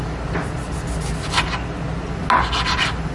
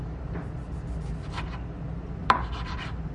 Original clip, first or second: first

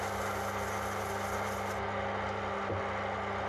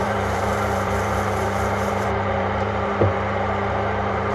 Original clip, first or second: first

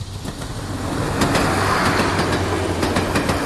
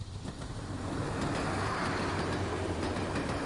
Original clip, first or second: first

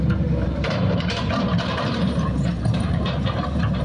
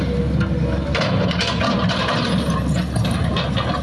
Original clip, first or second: second